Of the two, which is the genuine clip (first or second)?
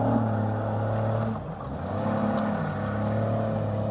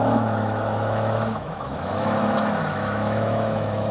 first